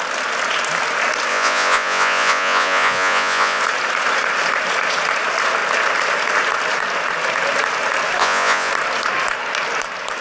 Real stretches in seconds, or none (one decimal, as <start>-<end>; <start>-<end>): 0.0-1.3; 3.6-8.2; 8.7-10.2